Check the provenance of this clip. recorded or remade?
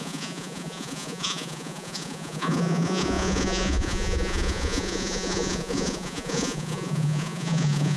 remade